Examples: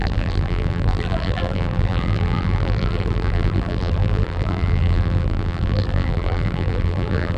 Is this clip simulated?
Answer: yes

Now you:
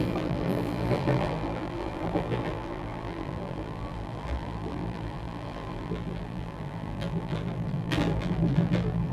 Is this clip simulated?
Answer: yes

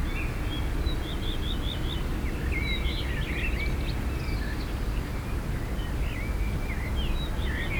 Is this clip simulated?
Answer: no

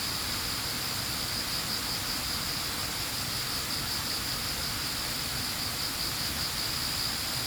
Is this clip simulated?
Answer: no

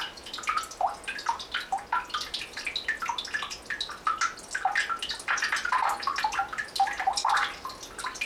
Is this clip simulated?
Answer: no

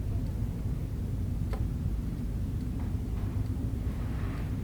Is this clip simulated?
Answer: yes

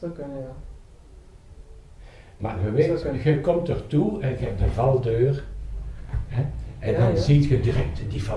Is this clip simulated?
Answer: yes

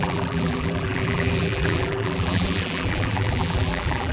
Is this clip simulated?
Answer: yes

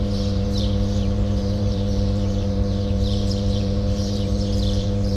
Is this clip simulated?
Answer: yes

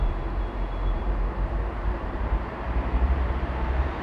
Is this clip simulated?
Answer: yes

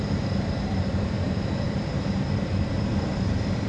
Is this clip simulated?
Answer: yes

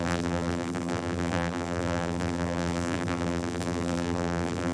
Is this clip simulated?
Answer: yes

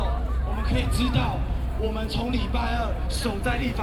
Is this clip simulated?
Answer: yes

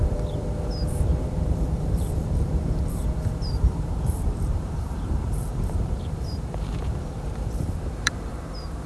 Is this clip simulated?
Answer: yes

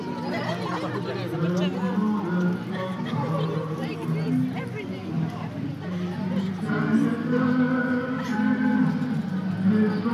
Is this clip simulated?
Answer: no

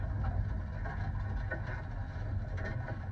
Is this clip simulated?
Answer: no